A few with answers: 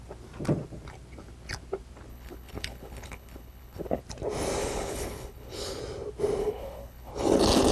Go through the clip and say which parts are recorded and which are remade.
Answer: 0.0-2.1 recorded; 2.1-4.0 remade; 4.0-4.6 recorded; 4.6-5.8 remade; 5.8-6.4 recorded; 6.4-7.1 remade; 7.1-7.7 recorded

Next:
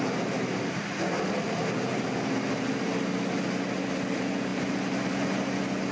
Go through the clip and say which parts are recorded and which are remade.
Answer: 0.0-5.9 recorded

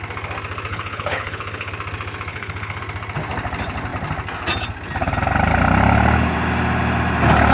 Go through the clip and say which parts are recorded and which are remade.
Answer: 0.0-0.7 recorded; 0.7-1.7 remade; 1.7-2.3 recorded; 2.3-2.8 remade; 2.8-7.5 recorded

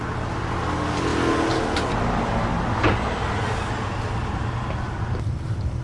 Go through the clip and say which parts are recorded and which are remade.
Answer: 0.0-5.8 recorded

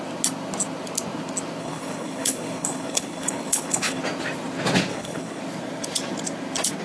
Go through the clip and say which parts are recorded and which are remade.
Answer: 0.0-1.6 recorded; 1.6-4.0 remade; 4.0-4.9 recorded; 4.9-5.4 remade; 5.4-6.8 recorded

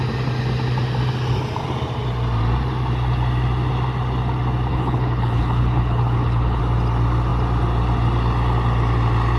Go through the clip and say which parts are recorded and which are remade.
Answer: 0.0-4.7 recorded; 4.7-6.6 remade; 6.6-9.4 recorded